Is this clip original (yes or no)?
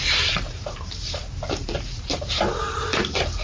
no